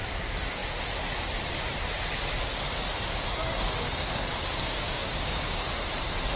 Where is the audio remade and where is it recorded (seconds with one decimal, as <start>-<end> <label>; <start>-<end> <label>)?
0.0-3.1 recorded; 3.1-5.7 remade; 5.7-6.4 recorded